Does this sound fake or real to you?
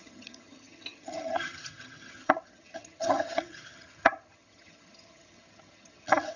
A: fake